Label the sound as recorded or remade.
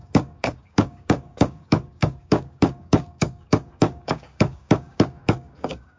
remade